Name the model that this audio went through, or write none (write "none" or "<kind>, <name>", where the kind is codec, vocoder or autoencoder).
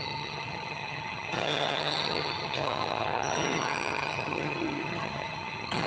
vocoder, HiFi-GAN